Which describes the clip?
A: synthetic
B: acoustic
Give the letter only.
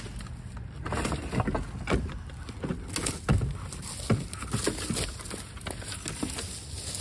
B